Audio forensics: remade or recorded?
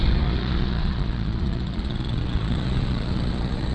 remade